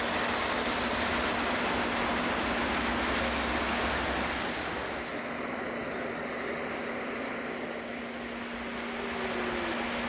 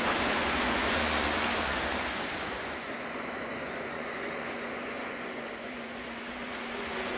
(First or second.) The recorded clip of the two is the first